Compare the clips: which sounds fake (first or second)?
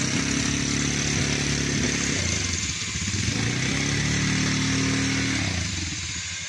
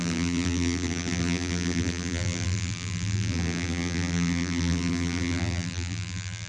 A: second